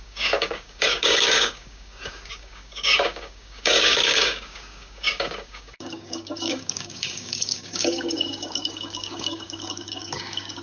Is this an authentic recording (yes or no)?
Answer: no